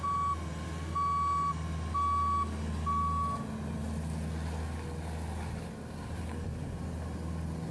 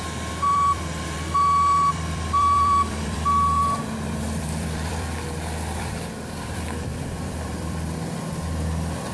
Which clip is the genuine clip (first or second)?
first